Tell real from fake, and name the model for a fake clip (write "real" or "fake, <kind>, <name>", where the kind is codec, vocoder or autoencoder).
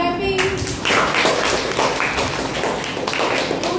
real